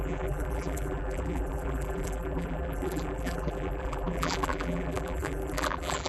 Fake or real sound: fake